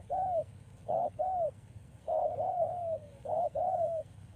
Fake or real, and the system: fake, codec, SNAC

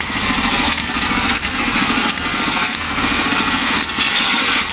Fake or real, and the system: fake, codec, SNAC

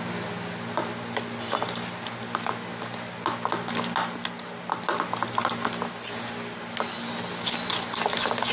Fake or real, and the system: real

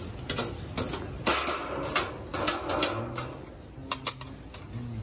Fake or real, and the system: real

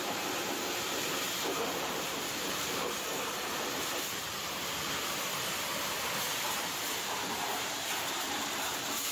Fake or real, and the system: fake, vocoder, BigVGAN v2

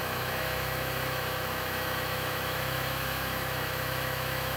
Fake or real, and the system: fake, autoencoder, DAC-VAE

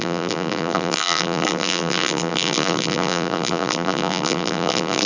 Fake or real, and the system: fake, vocoder, BigVGAN v2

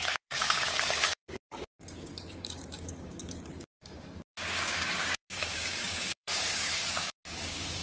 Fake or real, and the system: fake, codec, DAC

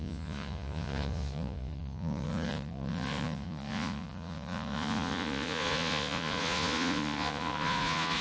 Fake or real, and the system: fake, vocoder, Vocos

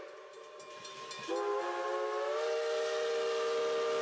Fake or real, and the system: real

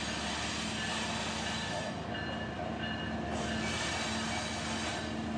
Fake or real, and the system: real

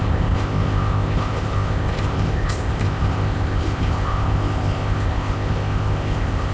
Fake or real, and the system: fake, codec, ZipCodec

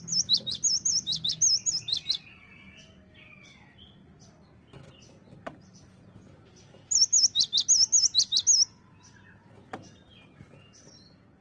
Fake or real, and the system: real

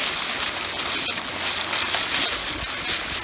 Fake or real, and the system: real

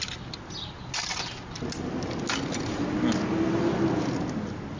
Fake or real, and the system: real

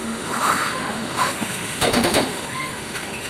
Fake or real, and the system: fake, autoencoder, DAC-VAE